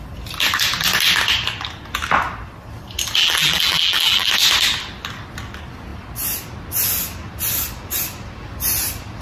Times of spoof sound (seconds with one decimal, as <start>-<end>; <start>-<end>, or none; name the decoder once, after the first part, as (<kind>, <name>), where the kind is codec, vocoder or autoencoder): 3.2-4.3 (vocoder, BigVGAN v2)